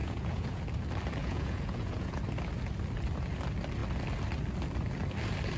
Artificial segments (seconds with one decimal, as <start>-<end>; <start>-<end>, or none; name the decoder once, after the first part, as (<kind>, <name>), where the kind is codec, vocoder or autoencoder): 0.0-0.6 (vocoder, Vocos); 1.2-2.2